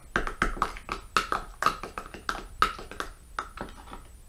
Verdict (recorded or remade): recorded